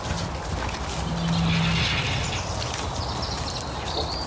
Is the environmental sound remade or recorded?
recorded